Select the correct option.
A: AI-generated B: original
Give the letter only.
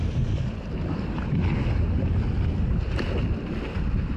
B